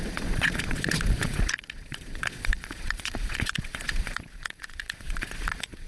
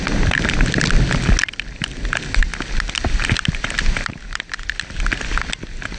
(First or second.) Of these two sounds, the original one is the second